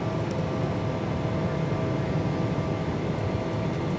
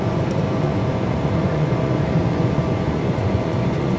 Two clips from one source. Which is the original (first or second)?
first